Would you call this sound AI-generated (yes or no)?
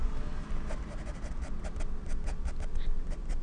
no